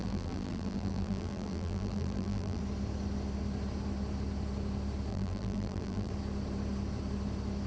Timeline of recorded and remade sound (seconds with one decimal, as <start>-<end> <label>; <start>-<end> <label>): 0.0-2.6 remade; 2.6-5.1 recorded; 5.1-6.1 remade; 6.1-7.7 recorded